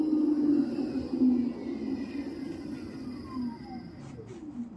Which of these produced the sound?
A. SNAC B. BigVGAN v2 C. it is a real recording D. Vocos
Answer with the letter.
C